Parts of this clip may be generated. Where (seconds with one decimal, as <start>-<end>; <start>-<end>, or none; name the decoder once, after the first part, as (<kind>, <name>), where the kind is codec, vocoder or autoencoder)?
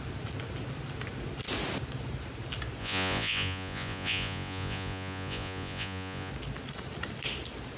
2.8-6.3 (vocoder, Vocos)